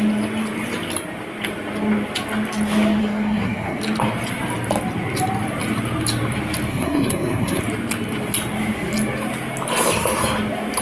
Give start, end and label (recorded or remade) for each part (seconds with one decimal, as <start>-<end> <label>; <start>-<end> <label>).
0.0-3.0 recorded; 3.0-3.8 remade; 3.8-6.7 recorded; 6.7-7.6 remade; 7.6-10.8 recorded